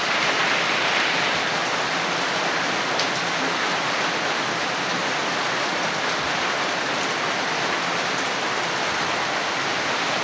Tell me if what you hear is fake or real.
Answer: real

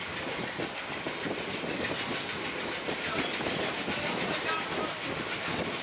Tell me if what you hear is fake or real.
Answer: real